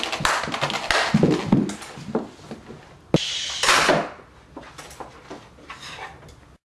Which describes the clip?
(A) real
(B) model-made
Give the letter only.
A